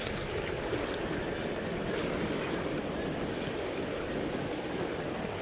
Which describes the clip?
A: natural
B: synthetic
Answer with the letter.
A